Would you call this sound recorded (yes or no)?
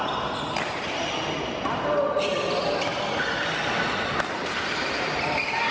yes